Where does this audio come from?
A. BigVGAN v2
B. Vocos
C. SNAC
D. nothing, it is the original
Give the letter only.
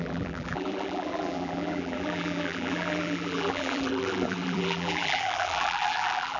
A